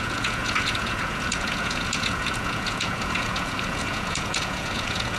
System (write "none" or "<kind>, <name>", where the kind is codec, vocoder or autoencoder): vocoder, Vocos